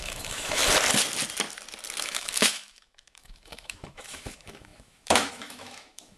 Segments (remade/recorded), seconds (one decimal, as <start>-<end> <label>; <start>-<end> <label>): 0.0-0.6 remade; 0.6-2.0 recorded; 2.0-6.2 remade